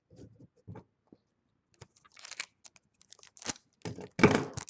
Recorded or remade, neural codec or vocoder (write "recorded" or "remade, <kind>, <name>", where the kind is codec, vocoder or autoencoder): recorded